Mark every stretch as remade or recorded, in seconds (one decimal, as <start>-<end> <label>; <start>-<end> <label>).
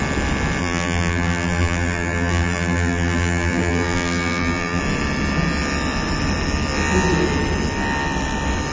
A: 0.0-0.6 recorded; 0.6-4.8 remade; 4.8-8.7 recorded